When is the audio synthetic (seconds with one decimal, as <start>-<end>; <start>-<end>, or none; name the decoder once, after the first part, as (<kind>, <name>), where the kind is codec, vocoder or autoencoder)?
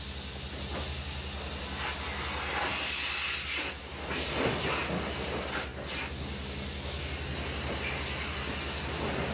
none